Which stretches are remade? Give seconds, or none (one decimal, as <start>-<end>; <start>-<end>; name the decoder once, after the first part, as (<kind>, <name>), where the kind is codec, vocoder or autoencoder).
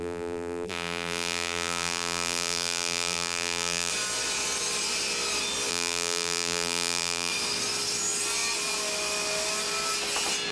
0.0-3.9 (vocoder, BigVGAN v2); 5.7-7.3